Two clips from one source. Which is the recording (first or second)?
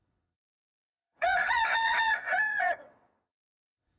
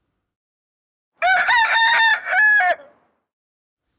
second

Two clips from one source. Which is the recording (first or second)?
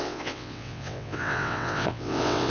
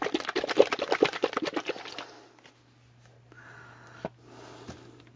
second